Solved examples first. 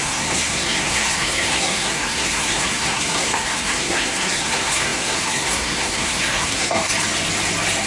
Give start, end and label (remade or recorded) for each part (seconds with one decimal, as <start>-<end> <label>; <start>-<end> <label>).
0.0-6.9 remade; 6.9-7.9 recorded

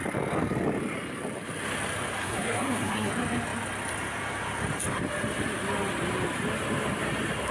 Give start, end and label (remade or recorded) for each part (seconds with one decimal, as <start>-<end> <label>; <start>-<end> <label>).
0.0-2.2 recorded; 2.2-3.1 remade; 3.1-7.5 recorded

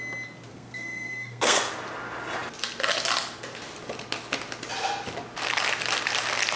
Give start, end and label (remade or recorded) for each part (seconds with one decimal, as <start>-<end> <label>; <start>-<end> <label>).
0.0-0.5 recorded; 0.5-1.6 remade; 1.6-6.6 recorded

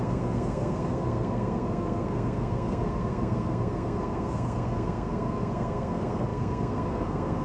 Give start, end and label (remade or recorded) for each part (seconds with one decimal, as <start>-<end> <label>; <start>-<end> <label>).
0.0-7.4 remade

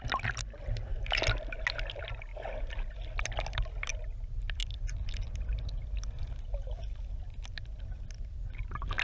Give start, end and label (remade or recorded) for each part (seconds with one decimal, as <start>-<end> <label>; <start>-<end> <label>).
0.0-9.0 recorded

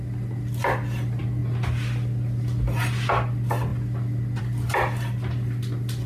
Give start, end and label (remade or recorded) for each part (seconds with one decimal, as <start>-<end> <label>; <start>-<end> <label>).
0.0-6.1 recorded

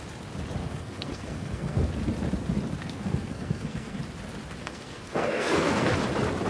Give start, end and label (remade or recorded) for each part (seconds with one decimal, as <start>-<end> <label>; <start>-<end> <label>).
0.0-0.6 recorded; 0.6-1.9 remade; 1.9-2.8 recorded; 2.8-4.0 remade; 4.0-4.6 recorded; 4.6-5.9 remade; 5.9-6.5 recorded